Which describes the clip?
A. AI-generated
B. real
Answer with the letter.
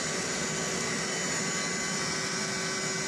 B